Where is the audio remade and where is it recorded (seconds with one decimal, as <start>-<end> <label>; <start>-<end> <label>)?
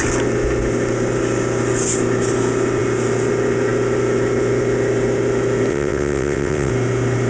0.0-5.7 recorded; 5.7-6.7 remade; 6.7-7.3 recorded